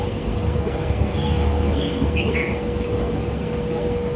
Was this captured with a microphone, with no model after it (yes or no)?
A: no